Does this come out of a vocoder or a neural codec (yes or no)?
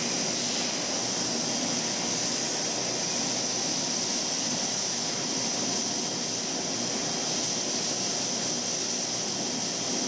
no